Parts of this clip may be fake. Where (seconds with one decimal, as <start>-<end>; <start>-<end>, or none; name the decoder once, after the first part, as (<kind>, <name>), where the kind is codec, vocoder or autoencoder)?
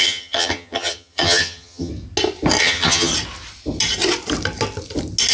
0.0-1.9 (vocoder, HiFi-GAN); 2.6-3.1